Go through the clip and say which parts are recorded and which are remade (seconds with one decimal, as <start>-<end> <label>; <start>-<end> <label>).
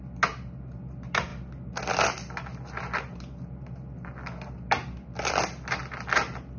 0.0-6.6 recorded